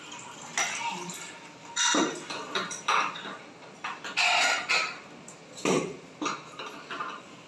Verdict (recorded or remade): recorded